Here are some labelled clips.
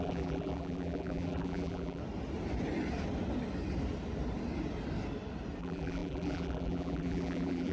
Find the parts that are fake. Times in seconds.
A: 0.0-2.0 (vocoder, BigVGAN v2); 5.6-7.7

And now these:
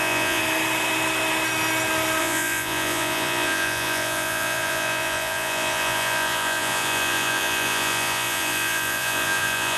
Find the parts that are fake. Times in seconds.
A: 0.0-0.4 (vocoder, Vocos); 2.2-9.8